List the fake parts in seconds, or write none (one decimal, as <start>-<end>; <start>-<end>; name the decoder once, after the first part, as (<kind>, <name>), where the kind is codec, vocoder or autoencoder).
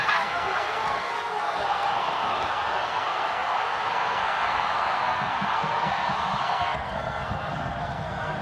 0.0-8.4 (codec, SNAC)